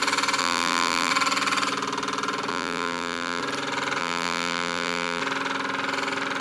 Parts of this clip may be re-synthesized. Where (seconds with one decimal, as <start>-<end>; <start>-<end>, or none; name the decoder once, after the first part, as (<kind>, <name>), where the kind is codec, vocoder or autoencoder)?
0.4-1.1 (vocoder, BigVGAN v2); 2.5-3.4; 4.0-5.2